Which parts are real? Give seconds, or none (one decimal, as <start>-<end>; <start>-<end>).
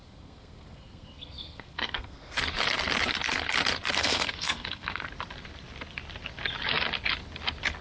2.4-4.0; 5.0-7.8